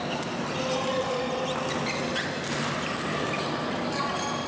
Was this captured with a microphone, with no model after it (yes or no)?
yes